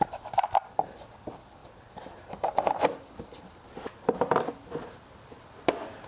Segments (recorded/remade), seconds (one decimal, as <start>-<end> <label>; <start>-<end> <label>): 0.0-1.6 recorded; 1.6-2.9 remade; 2.9-3.9 recorded; 3.9-4.5 remade; 4.5-6.1 recorded

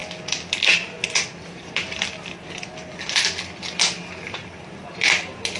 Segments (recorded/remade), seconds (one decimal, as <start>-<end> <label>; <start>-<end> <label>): 0.0-5.6 recorded

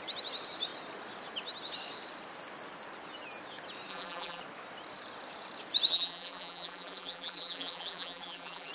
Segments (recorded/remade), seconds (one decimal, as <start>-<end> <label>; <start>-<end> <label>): 0.0-3.9 recorded; 3.9-4.4 remade; 4.4-5.9 recorded; 5.9-8.7 remade

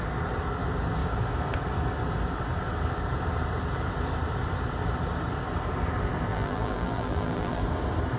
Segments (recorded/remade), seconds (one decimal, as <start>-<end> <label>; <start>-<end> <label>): 0.0-6.3 recorded; 6.3-7.6 remade; 7.6-8.2 recorded

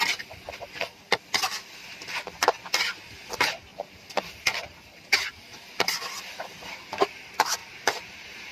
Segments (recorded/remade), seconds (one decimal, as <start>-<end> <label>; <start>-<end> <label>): 0.0-3.7 recorded; 3.7-5.3 remade; 5.3-7.6 recorded; 7.6-8.5 remade

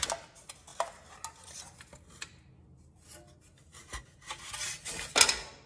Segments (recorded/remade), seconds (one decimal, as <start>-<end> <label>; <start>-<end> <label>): 0.0-3.7 recorded; 3.7-5.1 remade; 5.1-5.7 recorded

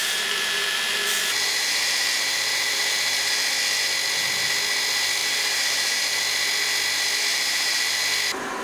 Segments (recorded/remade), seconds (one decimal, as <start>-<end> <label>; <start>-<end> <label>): 0.0-3.3 remade; 3.3-5.2 recorded; 5.2-6.2 remade; 6.2-7.3 recorded; 7.3-8.0 remade; 8.0-8.6 recorded